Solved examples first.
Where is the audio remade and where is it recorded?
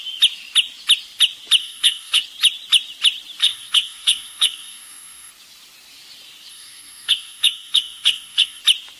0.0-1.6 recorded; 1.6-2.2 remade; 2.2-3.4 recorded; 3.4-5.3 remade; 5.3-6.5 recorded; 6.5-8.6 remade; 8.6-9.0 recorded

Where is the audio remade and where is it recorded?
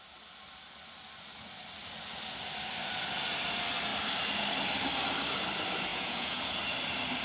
0.0-5.9 recorded; 5.9-6.4 remade; 6.4-7.2 recorded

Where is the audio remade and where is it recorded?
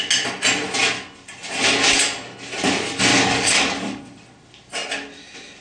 0.0-3.1 recorded; 3.1-4.0 remade; 4.0-5.6 recorded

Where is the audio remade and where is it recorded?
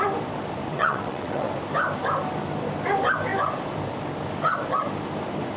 0.0-0.7 recorded; 0.7-1.5 remade; 1.5-5.6 recorded